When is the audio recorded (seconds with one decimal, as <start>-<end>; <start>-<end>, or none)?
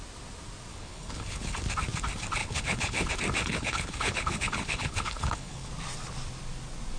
0.0-0.7; 1.6-2.4; 3.1-3.5; 5.7-7.0